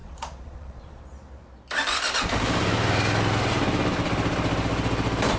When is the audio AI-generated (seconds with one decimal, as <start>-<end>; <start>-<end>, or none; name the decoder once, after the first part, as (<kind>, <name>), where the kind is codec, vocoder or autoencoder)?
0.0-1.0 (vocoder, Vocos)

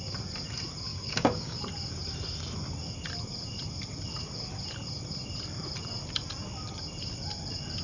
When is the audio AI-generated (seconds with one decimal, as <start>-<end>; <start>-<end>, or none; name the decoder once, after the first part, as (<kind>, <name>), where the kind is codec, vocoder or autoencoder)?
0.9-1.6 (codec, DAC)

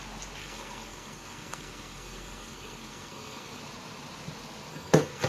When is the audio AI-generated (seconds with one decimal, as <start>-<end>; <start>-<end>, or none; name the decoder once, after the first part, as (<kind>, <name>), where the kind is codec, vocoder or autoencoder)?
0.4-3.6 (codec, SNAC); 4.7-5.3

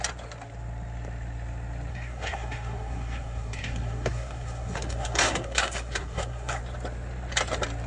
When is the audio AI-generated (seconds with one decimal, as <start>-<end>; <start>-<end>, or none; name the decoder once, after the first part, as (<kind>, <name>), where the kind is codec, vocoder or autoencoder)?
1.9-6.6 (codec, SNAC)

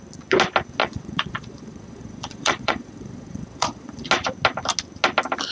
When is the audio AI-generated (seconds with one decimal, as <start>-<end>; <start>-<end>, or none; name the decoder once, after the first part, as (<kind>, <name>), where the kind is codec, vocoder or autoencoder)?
0.8-4.1 (vocoder, Vocos)

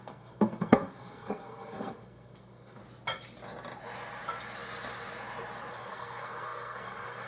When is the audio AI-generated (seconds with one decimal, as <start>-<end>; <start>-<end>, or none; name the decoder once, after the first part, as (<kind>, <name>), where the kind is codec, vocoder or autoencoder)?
0.0-2.8 (codec, SNAC); 5.7-7.3